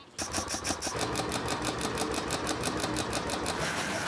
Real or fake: real